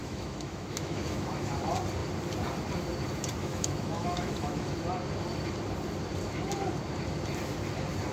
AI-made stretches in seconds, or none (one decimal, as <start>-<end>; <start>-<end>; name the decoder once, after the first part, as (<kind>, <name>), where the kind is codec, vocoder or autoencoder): 0.0-1.5 (autoencoder, DAC-VAE); 3.4-4.7